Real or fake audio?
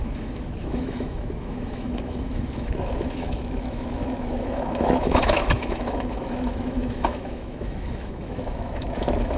fake